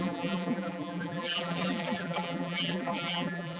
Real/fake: fake